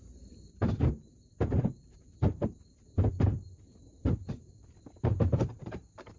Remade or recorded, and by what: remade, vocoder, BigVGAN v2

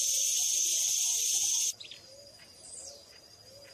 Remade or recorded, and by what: recorded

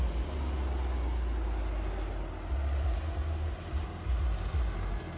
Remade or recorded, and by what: recorded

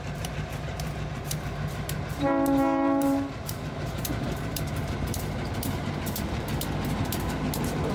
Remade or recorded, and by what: remade, vocoder, BigVGAN v2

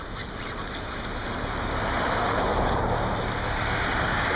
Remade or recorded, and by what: recorded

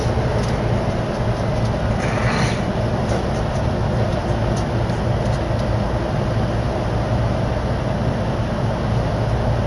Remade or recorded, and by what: recorded